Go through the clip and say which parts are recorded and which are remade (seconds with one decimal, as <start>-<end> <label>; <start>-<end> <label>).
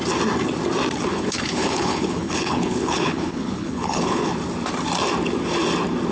0.0-1.1 recorded; 1.1-4.3 remade; 4.3-6.1 recorded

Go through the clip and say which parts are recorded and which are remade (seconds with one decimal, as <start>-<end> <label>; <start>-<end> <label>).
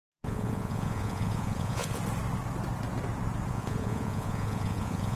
0.0-2.0 remade; 2.0-3.5 recorded; 3.5-5.2 remade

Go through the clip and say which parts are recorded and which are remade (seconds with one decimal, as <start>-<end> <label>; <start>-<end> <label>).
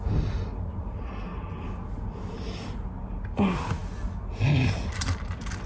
0.0-5.7 recorded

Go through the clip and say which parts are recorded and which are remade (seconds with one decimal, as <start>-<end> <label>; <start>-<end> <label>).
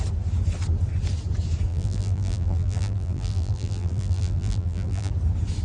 0.0-1.7 recorded; 1.7-5.1 remade; 5.1-5.6 recorded